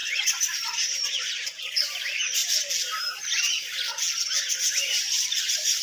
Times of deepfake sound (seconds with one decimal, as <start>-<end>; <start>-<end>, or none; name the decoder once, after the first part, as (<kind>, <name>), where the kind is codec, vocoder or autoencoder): 0.0-2.4 (vocoder, BigVGAN v2); 4.4-5.8